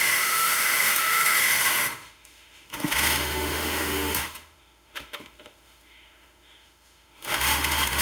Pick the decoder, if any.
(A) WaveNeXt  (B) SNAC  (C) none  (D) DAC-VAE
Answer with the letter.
D